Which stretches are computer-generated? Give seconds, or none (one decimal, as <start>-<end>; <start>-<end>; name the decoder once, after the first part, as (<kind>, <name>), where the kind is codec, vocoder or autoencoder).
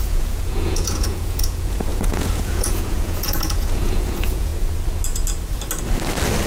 0.0-4.5 (vocoder, Vocos)